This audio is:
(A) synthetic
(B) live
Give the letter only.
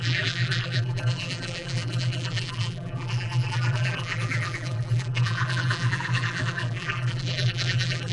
A